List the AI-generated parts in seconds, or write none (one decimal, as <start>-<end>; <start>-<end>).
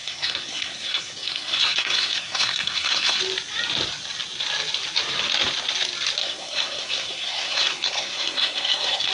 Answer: 0.0-3.2; 6.2-9.1